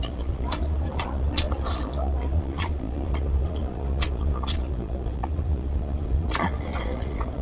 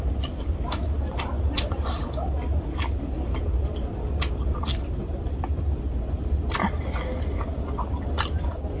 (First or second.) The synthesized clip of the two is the first